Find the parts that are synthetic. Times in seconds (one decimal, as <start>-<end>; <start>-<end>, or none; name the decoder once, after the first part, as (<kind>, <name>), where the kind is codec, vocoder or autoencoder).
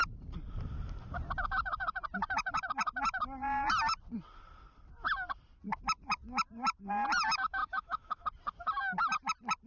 7.6-8.2 (autoencoder, DAC-VAE)